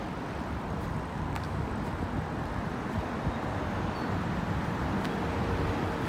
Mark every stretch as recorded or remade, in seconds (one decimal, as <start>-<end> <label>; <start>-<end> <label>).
0.0-1.1 recorded; 1.1-1.7 remade; 1.7-6.1 recorded